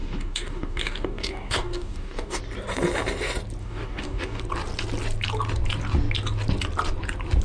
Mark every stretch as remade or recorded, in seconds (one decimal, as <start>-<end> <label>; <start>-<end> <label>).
0.0-2.4 remade; 2.4-3.6 recorded; 3.6-4.4 remade; 4.4-7.4 recorded